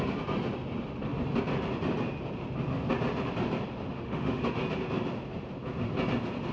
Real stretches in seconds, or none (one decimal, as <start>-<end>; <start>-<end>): 0.0-3.9; 4.6-6.5